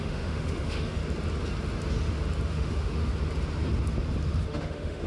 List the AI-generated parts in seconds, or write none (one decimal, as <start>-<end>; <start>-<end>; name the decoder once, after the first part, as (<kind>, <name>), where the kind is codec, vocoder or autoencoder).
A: 0.0-1.0 (autoencoder, DAC-VAE); 2.5-3.1; 4.4-5.1

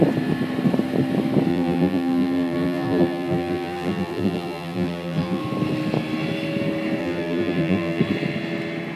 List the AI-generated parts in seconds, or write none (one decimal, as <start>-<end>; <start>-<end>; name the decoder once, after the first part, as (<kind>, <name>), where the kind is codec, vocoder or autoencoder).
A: 1.5-5.4 (vocoder, BigVGAN v2); 7.0-8.0

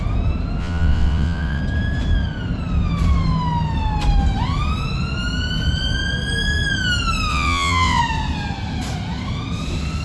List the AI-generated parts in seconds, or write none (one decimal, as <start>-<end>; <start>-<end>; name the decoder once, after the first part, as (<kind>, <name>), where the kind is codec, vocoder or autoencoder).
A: 0.6-1.6 (vocoder, WaveNeXt); 7.3-8.0

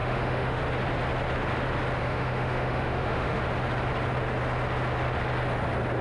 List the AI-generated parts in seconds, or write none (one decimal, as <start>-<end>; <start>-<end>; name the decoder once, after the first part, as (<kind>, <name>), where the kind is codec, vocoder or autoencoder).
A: 0.0-0.6 (autoencoder, DAC-VAE); 2.0-3.4